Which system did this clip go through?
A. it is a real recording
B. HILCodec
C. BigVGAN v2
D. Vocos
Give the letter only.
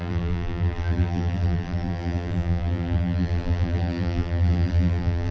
C